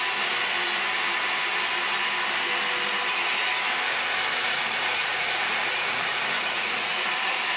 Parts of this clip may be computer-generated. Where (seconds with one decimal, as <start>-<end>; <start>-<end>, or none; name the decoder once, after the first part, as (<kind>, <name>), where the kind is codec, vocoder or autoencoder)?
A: 4.4-7.6 (vocoder, Vocos)